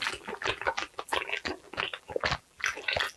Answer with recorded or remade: remade